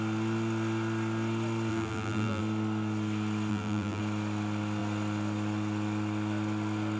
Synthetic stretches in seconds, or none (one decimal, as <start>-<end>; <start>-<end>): 1.7-2.4; 3.5-4.0